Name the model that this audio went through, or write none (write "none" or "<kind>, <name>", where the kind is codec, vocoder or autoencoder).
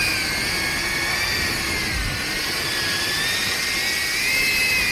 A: none